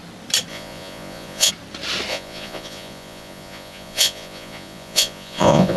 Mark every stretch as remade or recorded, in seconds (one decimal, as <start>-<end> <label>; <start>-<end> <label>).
0.0-0.5 recorded; 0.5-1.5 remade; 1.5-2.1 recorded; 2.1-5.8 remade